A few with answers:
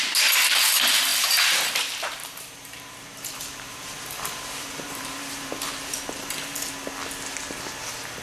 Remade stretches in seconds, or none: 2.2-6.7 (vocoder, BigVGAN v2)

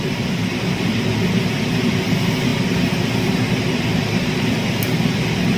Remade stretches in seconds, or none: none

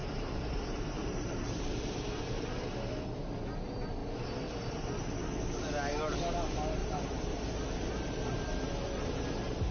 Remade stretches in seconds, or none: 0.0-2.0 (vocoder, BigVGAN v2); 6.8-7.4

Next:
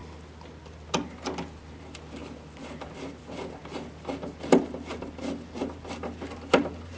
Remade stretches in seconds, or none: 1.8-7.0 (vocoder, BigVGAN v2)

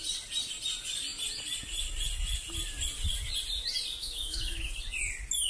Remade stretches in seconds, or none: 4.0-4.7 (autoencoder, DAC-VAE)

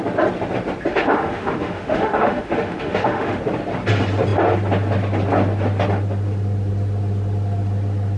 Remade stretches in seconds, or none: 0.9-3.4 (autoencoder, DAC-VAE)